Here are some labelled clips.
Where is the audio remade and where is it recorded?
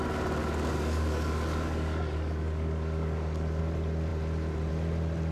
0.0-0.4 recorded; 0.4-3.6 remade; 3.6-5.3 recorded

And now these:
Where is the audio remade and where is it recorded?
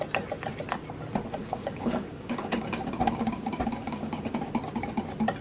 0.0-1.4 recorded; 1.4-4.5 remade; 4.5-5.4 recorded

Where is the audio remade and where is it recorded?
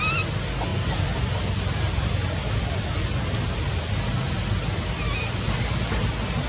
0.0-6.5 recorded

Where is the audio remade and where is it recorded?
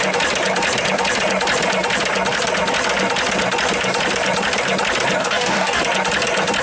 0.0-5.2 recorded; 5.2-5.8 remade; 5.8-6.6 recorded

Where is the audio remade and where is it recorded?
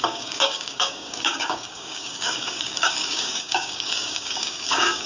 0.0-5.1 remade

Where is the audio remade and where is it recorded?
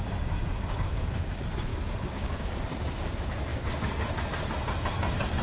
0.0-1.7 recorded; 1.7-2.6 remade; 2.6-5.4 recorded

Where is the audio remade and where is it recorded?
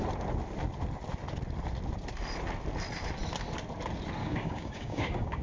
0.0-4.2 recorded; 4.2-5.4 remade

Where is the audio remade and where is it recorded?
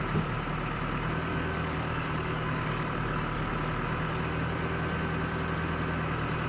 0.0-1.3 recorded; 1.3-3.5 remade; 3.5-6.5 recorded